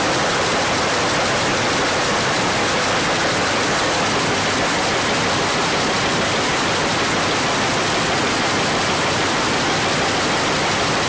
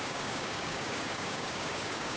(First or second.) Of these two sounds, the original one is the first